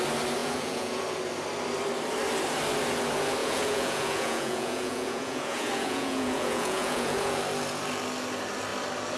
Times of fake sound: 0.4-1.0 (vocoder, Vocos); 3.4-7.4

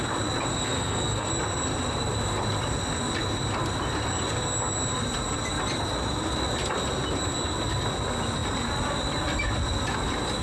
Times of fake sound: 0.5-1.3 (codec, SNAC)

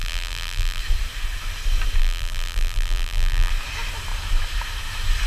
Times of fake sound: 0.0-0.8 (vocoder, BigVGAN v2); 2.0-3.5

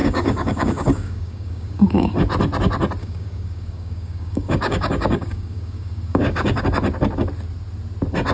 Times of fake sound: 0.0-2.1 (codec, DAC); 3.0-6.6

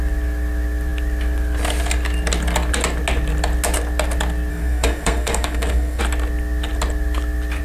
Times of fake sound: 4.5-6.0 (codec, SNAC)

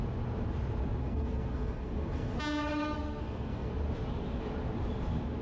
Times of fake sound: 1.0-2.4 (codec, SNAC); 3.0-3.7

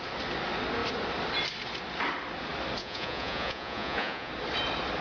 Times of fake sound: 2.8-4.3 (vocoder, Vocos)

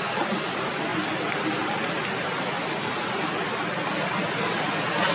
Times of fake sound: none